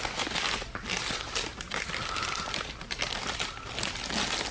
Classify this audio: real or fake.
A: real